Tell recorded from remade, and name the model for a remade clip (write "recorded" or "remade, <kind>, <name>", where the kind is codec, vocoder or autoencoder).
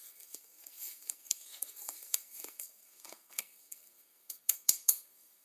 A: remade, codec, SNAC